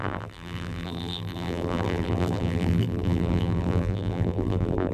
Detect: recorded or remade remade